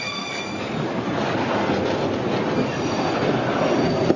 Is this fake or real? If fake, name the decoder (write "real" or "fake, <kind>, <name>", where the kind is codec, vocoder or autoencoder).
real